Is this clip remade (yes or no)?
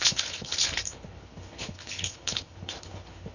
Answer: yes